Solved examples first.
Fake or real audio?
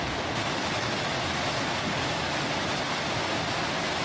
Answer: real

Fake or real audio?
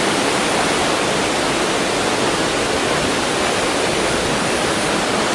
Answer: real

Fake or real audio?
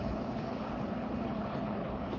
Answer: fake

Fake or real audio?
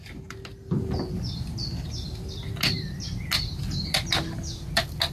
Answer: real